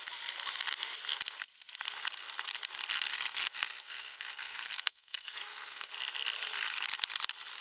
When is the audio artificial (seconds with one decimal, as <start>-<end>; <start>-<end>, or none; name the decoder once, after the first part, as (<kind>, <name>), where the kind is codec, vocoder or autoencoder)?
3.1-5.9 (codec, SNAC)